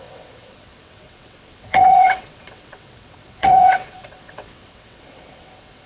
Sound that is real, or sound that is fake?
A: fake